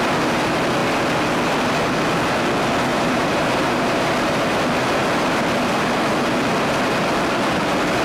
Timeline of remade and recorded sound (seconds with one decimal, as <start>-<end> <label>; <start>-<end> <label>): 0.0-2.9 recorded; 2.9-4.1 remade; 4.1-8.0 recorded